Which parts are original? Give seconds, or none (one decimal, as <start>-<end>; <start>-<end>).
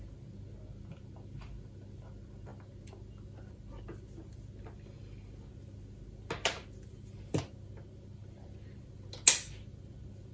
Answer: 0.0-10.3